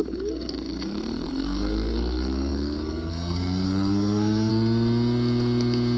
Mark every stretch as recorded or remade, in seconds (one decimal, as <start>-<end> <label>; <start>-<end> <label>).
0.0-4.5 remade; 4.5-6.0 recorded